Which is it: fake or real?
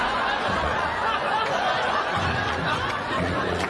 fake